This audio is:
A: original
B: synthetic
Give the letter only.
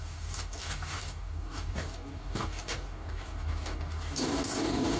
B